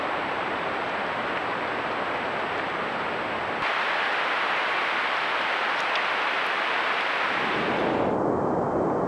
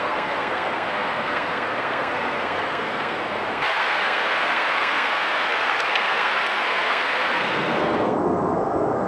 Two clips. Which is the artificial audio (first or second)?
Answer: second